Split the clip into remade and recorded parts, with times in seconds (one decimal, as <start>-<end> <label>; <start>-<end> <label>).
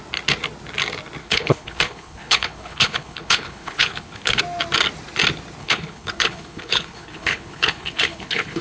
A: 0.0-1.2 recorded; 1.2-4.4 remade; 4.4-5.6 recorded; 5.6-8.6 remade